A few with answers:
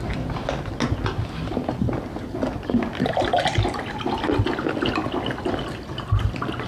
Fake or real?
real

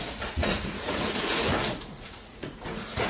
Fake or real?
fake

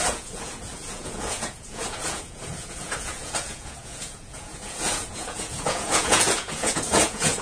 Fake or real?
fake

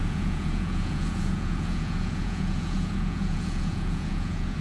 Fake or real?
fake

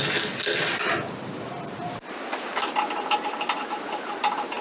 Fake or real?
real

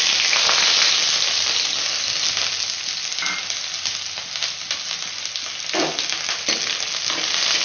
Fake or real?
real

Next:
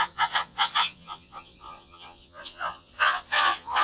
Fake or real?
fake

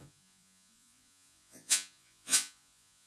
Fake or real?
fake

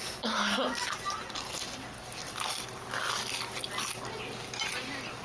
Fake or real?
real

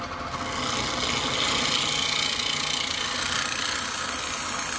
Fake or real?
real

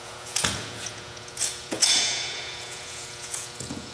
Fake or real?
fake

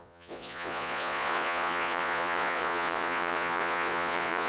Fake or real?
fake